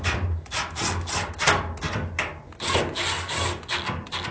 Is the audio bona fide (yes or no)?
yes